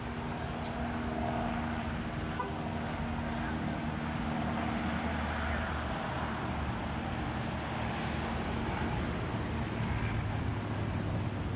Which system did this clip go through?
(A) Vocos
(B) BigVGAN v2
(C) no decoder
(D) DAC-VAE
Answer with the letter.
C